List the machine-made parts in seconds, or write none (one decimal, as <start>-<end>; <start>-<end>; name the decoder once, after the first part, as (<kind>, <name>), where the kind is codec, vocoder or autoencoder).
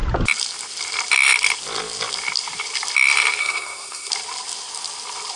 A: 3.4-4.1 (codec, SNAC)